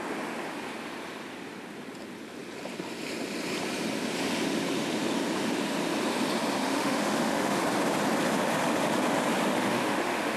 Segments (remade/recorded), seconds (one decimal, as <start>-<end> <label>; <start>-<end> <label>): 0.0-6.6 recorded; 6.6-7.6 remade; 7.6-9.5 recorded; 9.5-10.4 remade